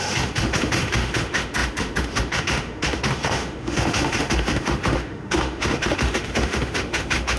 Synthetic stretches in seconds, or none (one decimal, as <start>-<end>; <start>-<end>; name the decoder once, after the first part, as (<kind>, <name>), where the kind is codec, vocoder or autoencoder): 0.0-7.4 (autoencoder, DAC-VAE)